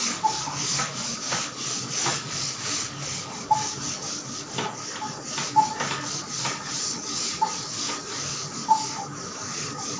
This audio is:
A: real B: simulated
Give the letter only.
B